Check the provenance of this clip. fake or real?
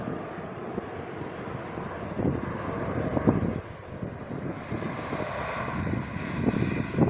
real